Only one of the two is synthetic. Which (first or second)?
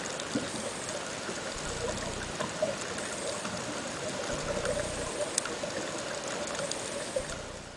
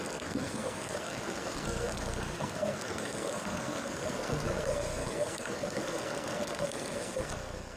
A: second